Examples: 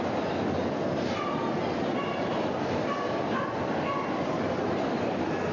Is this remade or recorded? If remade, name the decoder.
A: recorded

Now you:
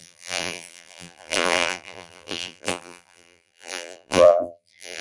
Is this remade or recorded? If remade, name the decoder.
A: remade, vocoder, BigVGAN v2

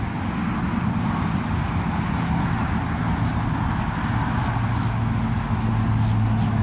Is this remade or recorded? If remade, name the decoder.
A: recorded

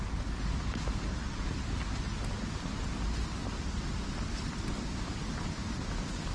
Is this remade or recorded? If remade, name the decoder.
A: recorded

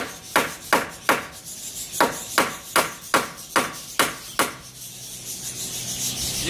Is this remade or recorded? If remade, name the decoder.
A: recorded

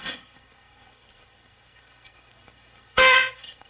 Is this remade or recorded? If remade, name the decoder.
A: remade, codec, SNAC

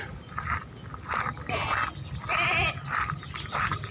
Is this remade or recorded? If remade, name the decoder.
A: recorded